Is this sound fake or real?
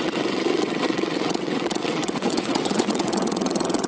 fake